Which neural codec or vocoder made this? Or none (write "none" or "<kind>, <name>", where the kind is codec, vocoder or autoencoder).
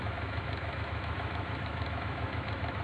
autoencoder, DAC-VAE